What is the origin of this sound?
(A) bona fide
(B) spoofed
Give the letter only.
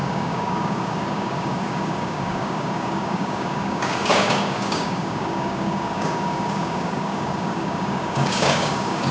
B